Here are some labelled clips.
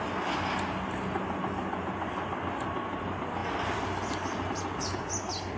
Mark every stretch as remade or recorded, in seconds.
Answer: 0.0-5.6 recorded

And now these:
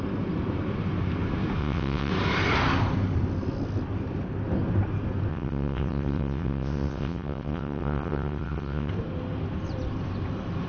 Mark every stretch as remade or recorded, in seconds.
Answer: 0.0-1.6 recorded; 1.6-2.1 remade; 2.1-5.3 recorded; 5.3-8.9 remade; 8.9-10.7 recorded

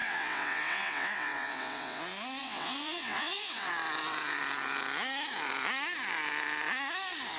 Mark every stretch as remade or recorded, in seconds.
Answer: 0.0-2.0 remade; 2.0-2.4 recorded; 2.4-3.7 remade; 3.7-7.4 recorded

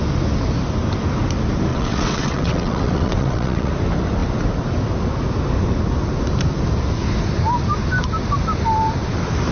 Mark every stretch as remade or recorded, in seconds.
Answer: 0.0-1.7 recorded; 1.7-3.7 remade; 3.7-9.5 recorded

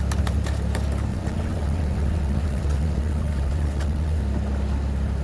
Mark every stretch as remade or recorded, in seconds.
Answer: 0.0-1.1 recorded; 1.1-4.2 remade; 4.2-5.2 recorded